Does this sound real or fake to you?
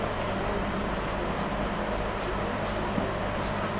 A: real